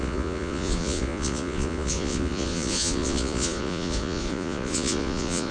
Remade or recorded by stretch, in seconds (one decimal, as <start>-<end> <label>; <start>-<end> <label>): 0.0-5.5 remade